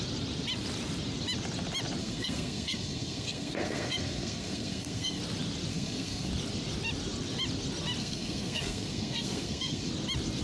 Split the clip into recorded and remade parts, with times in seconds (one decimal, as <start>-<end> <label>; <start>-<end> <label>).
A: 0.0-2.0 recorded; 2.0-5.2 remade; 5.2-5.7 recorded; 5.7-6.3 remade; 6.3-8.0 recorded; 8.0-9.9 remade; 9.9-10.4 recorded